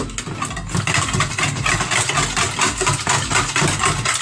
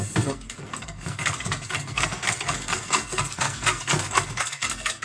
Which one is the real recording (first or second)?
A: first